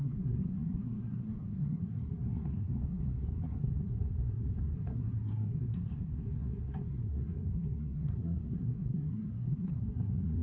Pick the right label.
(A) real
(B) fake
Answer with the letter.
B